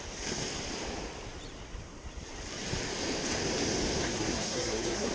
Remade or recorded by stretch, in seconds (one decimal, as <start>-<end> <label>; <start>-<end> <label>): 0.0-4.0 recorded; 4.0-5.1 remade